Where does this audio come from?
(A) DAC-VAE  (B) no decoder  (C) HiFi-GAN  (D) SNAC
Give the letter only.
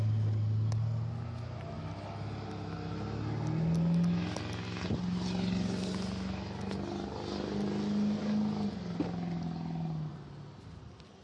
B